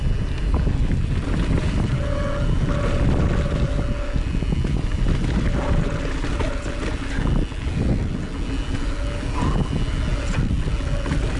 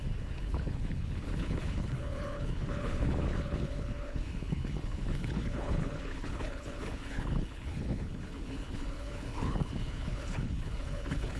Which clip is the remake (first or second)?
second